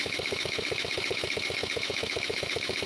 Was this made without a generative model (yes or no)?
no